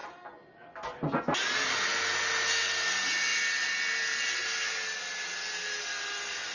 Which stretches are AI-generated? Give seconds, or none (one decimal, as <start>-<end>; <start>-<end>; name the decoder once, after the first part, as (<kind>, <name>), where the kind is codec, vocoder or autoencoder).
none